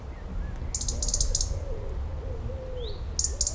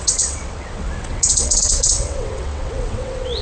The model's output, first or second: second